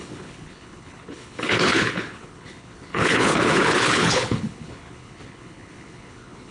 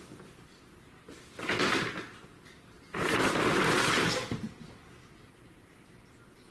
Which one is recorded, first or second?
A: second